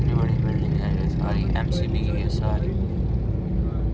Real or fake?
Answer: real